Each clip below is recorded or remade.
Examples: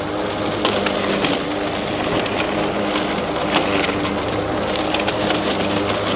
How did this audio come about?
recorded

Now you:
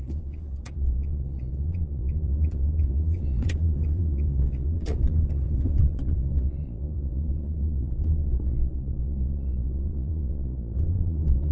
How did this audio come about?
remade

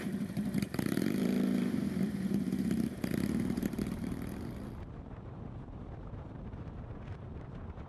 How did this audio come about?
remade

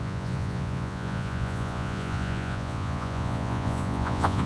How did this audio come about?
remade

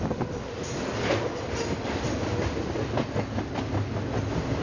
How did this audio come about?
recorded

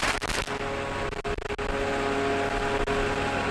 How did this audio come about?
recorded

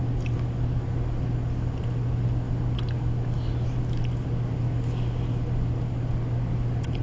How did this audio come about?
recorded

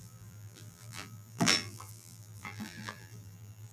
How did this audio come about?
remade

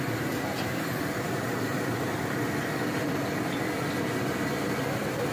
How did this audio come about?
recorded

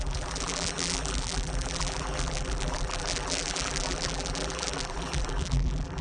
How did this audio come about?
remade